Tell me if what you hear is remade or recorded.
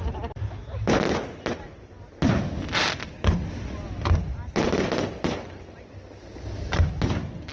recorded